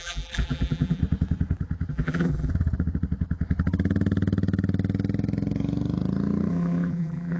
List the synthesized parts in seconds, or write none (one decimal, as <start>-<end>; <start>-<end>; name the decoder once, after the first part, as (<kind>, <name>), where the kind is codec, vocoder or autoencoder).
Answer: 0.0-1.0 (vocoder, BigVGAN v2); 1.9-2.5; 6.5-7.4